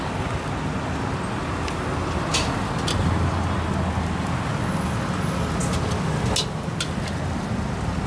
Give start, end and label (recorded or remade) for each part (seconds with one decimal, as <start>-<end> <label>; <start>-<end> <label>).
0.0-8.1 recorded